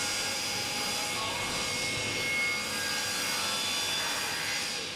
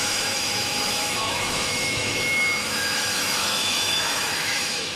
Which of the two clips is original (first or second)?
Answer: first